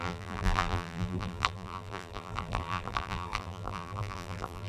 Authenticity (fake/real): fake